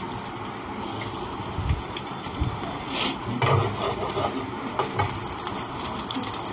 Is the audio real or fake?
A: real